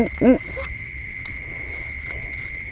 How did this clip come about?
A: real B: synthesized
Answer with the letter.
B